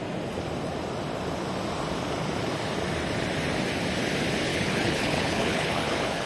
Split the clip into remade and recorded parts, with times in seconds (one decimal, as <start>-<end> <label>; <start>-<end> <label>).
0.0-4.5 recorded; 4.5-6.3 remade